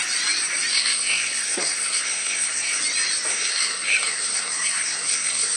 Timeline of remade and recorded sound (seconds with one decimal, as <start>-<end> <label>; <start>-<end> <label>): 0.0-0.7 recorded; 0.7-2.8 remade; 2.8-3.3 recorded; 3.3-5.6 remade